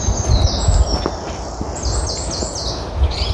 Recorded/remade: recorded